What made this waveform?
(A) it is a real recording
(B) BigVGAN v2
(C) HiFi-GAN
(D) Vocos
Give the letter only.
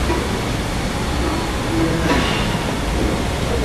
A